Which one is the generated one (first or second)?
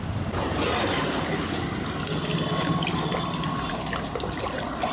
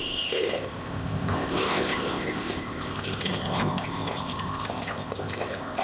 second